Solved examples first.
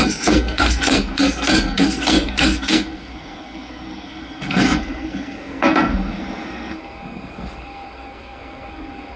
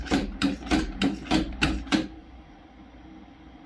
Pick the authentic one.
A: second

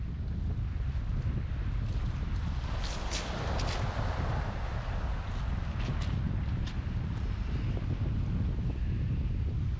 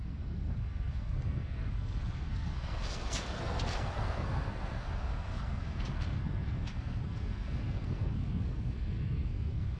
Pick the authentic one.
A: first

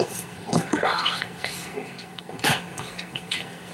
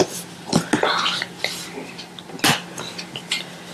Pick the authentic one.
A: second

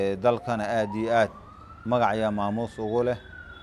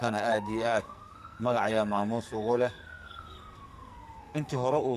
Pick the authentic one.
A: first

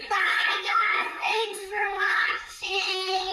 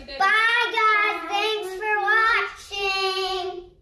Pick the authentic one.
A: second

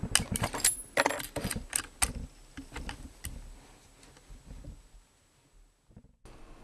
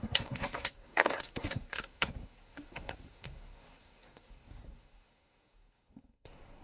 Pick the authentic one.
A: first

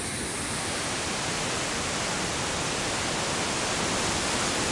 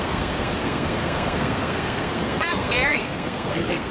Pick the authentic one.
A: first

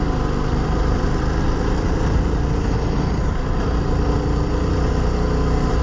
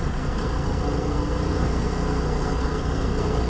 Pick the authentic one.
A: first